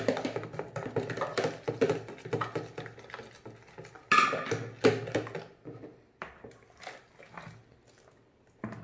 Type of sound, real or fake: real